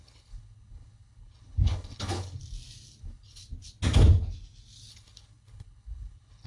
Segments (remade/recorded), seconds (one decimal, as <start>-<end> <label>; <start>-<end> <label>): 0.0-2.4 remade; 2.4-3.0 recorded; 3.0-3.4 remade; 3.4-4.9 recorded; 4.9-6.5 remade

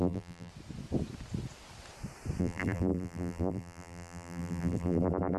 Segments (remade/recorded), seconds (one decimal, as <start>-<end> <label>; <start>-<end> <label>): 0.0-0.5 remade; 0.5-2.4 recorded; 2.4-5.4 remade

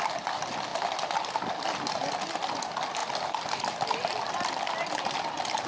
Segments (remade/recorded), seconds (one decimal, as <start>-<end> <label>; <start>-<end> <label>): 0.0-5.7 recorded

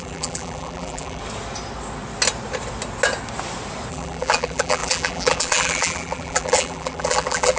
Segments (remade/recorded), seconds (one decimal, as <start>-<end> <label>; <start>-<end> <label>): 0.0-1.2 remade; 1.2-3.9 recorded; 3.9-7.6 remade

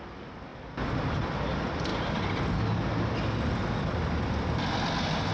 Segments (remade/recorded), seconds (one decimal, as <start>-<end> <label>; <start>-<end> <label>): 0.0-5.3 recorded

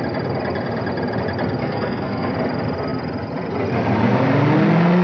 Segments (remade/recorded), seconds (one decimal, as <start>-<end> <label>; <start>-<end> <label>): 0.0-1.6 recorded; 1.6-2.3 remade; 2.3-5.0 recorded

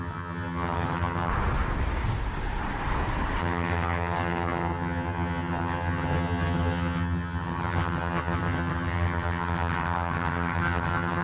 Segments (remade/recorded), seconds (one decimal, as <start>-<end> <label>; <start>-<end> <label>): 0.0-1.3 remade; 1.3-3.4 recorded; 3.4-11.2 remade